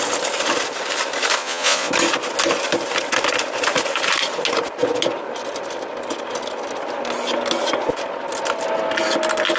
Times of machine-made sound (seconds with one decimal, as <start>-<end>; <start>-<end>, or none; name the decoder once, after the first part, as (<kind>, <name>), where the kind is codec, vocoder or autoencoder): 1.4-1.9 (vocoder, Vocos)